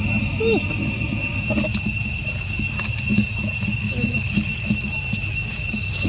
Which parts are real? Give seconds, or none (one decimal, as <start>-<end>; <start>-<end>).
0.0-3.7